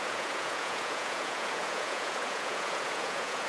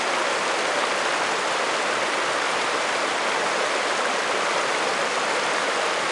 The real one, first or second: second